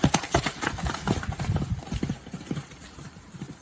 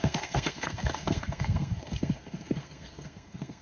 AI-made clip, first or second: second